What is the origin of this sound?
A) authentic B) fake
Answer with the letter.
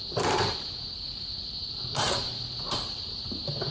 B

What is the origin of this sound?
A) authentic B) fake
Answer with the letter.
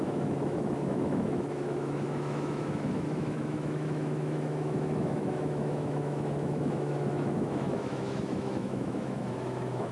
B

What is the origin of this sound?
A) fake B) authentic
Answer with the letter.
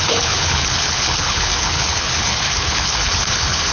A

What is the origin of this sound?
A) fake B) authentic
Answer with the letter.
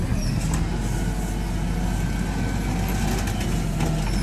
B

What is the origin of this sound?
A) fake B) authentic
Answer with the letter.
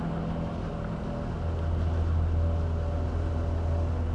B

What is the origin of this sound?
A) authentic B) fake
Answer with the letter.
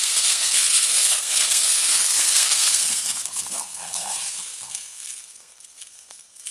B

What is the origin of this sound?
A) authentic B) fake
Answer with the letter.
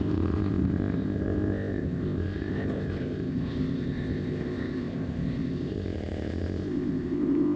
B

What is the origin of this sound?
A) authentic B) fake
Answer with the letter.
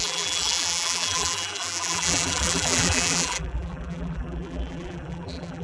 B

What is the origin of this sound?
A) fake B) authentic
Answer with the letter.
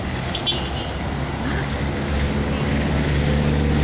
B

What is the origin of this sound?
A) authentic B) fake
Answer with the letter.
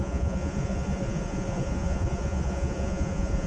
B